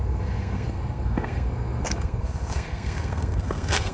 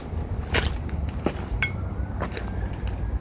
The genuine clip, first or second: second